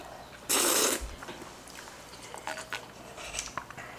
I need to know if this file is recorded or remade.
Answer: remade